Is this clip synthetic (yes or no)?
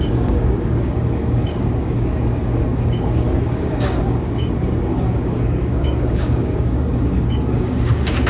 yes